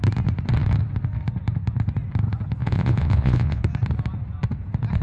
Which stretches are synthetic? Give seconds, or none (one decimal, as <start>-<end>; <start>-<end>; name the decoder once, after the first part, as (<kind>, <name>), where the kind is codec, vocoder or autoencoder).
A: 2.6-3.6 (vocoder, Vocos)